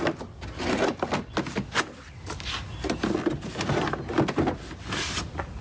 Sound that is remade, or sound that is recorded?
recorded